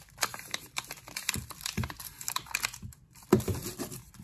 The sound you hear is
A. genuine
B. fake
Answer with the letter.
A